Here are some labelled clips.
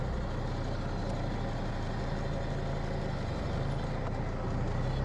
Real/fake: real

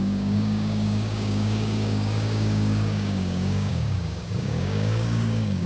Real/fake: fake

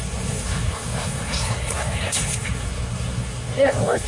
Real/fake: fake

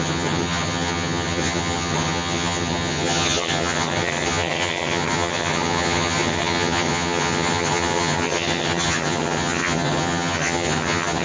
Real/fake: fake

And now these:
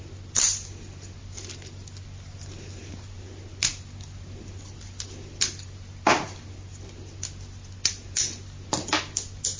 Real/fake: real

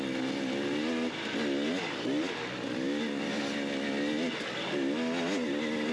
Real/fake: real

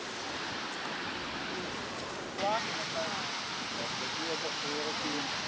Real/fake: real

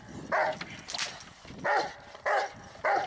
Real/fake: real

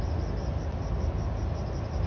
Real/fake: real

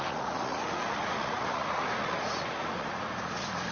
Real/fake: fake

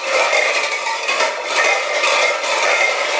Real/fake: fake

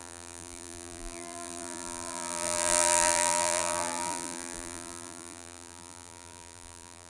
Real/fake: fake